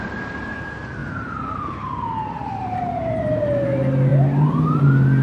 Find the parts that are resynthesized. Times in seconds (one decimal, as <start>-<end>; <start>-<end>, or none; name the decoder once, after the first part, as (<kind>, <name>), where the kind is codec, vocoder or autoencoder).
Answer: 1.0-1.6 (vocoder, BigVGAN v2); 2.6-3.4; 4.1-4.8